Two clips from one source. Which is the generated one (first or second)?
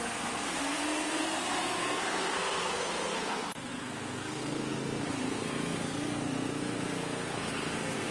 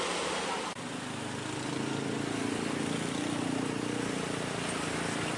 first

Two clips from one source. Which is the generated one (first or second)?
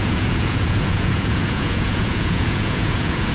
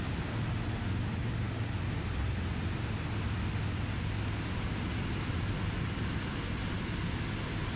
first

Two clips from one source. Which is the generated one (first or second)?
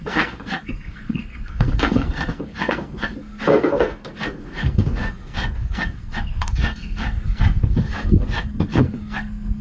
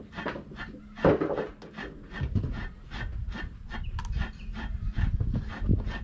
first